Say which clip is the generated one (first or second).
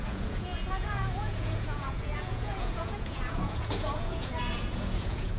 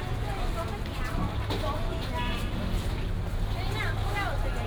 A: first